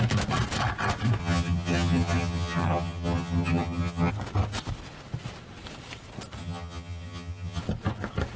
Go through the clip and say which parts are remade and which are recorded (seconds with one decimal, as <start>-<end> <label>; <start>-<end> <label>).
0.0-1.2 recorded; 1.2-4.1 remade; 4.1-6.4 recorded; 6.4-7.6 remade; 7.6-8.4 recorded